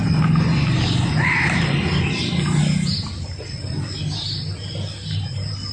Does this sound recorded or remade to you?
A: recorded